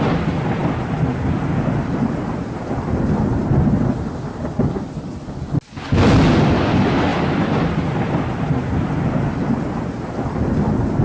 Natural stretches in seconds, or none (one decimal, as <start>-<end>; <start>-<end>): 0.0-11.0